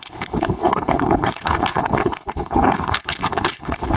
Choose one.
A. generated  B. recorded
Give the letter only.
A